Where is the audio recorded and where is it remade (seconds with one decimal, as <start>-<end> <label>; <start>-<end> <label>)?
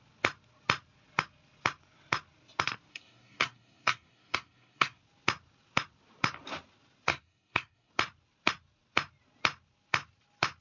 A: 0.0-2.9 recorded; 2.9-5.0 remade; 5.0-7.1 recorded; 7.1-7.9 remade; 7.9-10.6 recorded